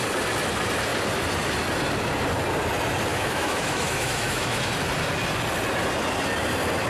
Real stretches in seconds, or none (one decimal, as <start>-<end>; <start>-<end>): 0.0-3.1; 4.7-6.9